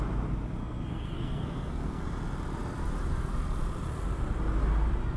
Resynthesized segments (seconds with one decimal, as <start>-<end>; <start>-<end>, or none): 0.6-2.0